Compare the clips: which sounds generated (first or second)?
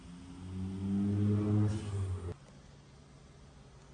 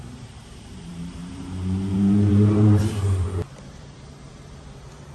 second